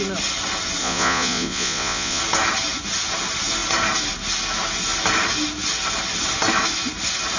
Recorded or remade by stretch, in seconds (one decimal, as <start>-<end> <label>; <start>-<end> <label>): 0.0-0.8 recorded; 0.8-2.2 remade; 2.2-7.4 recorded